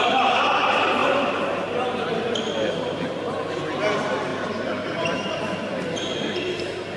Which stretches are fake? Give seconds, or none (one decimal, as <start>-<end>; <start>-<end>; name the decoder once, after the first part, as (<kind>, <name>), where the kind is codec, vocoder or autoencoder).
none